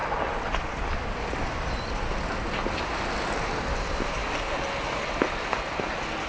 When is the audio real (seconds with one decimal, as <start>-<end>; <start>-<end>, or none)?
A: 0.0-6.3